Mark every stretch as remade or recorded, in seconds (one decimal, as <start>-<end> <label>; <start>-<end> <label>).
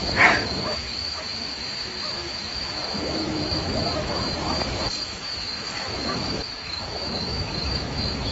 0.0-8.3 remade